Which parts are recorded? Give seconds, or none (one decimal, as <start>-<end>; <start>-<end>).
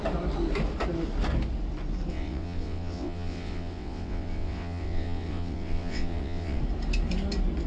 0.0-2.1; 6.6-7.7